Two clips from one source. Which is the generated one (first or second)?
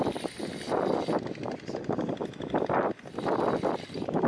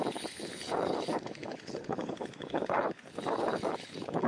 second